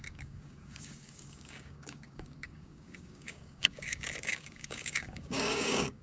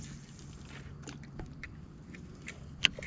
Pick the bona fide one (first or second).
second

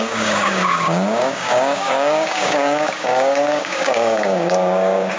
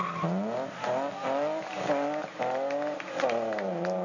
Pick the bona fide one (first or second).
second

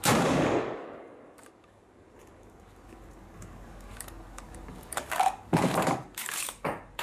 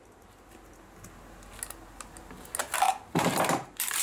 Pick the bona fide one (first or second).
second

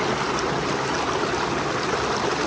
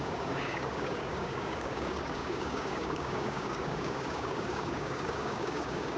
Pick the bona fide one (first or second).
first